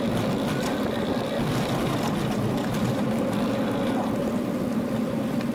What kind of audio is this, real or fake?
real